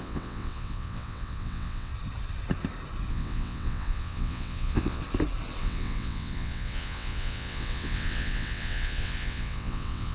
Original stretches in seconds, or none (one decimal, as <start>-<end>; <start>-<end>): 1.9-3.1; 5.0-5.6